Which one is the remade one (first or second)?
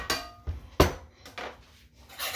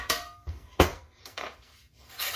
second